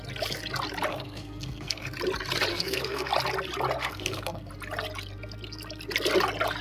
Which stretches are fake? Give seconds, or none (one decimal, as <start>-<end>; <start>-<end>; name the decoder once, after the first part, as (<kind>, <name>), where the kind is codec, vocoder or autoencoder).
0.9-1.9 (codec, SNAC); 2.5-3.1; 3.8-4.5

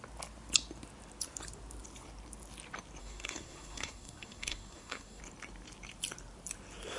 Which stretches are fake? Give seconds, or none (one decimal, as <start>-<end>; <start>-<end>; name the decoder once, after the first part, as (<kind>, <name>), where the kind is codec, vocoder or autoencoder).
3.0-5.2 (codec, SNAC)

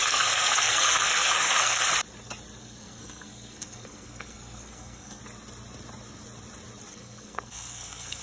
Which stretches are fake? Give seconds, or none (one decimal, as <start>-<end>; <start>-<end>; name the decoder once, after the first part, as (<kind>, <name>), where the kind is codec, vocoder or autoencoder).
0.0-1.8 (codec, SNAC); 2.6-5.2; 6.9-8.2

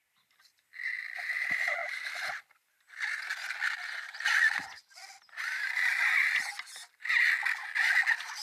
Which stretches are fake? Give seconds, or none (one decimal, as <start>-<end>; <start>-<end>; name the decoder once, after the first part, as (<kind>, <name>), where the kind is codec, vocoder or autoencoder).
none

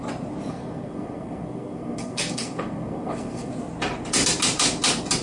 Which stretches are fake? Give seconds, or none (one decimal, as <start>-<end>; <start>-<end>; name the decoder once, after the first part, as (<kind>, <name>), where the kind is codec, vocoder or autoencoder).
0.5-3.5 (codec, SNAC)

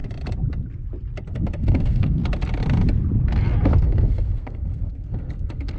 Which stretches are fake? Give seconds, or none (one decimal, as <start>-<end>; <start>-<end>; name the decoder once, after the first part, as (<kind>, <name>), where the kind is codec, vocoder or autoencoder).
1.3-2.2 (codec, SNAC); 3.8-5.8

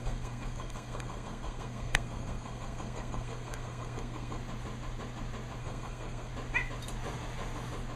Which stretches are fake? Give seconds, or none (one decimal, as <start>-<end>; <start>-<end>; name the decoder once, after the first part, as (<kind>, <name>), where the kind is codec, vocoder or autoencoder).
0.0-4.4 (codec, SNAC); 5.6-6.3